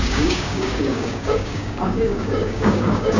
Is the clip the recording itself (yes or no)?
no